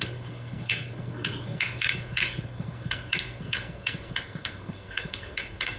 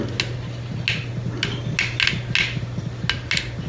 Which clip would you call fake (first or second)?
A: first